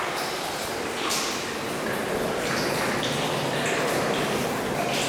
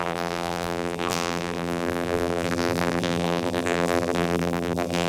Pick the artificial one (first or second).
second